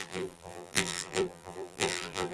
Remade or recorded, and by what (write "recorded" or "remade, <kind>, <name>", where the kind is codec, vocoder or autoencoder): remade, vocoder, BigVGAN v2